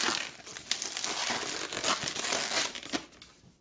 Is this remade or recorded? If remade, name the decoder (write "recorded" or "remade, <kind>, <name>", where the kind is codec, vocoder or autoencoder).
recorded